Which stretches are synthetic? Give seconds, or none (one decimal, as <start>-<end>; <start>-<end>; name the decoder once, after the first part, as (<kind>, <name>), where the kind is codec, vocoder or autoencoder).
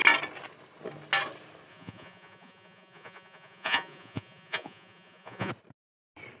1.7-5.5 (vocoder, Vocos)